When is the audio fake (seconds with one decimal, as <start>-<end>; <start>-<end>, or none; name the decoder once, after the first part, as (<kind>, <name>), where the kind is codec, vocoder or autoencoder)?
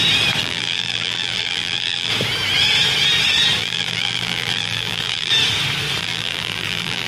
0.4-2.1 (vocoder, BigVGAN v2); 3.6-5.3; 6.0-7.1